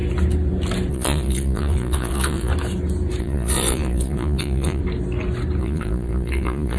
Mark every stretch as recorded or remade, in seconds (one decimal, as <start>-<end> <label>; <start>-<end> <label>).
0.0-0.9 recorded; 0.9-2.5 remade; 2.5-3.2 recorded; 3.2-4.8 remade; 4.8-5.6 recorded; 5.6-6.8 remade